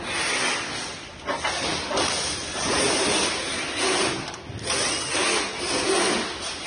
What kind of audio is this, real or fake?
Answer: real